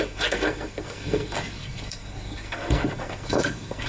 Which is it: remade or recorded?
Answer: remade